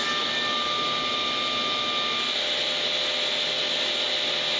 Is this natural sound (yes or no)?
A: yes